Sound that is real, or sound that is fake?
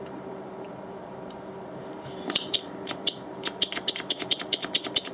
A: fake